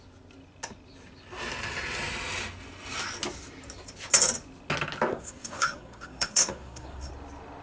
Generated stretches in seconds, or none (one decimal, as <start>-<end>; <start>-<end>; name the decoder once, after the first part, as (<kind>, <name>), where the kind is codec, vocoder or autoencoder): 5.1-7.1 (codec, SNAC)